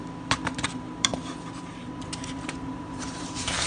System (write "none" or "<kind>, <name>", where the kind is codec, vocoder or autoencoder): vocoder, BigVGAN v2